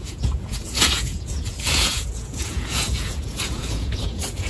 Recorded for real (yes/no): no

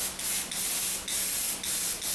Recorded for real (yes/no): yes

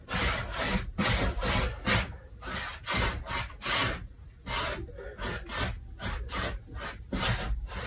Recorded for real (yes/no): yes